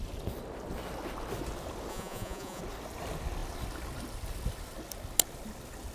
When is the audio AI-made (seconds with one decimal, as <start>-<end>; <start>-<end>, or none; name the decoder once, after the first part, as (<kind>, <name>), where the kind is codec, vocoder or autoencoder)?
1.9-2.6 (vocoder, Vocos)